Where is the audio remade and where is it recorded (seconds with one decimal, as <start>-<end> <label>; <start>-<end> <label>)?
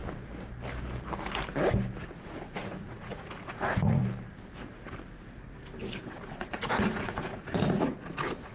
0.0-2.0 recorded; 2.0-4.0 remade; 4.0-6.0 recorded; 6.0-8.5 remade